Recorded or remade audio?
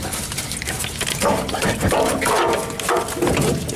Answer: recorded